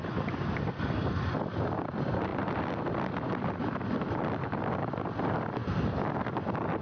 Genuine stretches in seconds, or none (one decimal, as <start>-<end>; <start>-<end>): 5.6-6.1